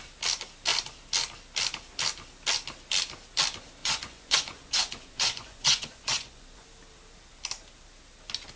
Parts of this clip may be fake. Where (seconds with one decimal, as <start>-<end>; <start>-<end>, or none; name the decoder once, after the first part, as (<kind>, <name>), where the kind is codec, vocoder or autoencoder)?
3.8-6.7 (vocoder, Vocos)